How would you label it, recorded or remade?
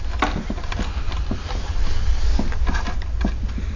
recorded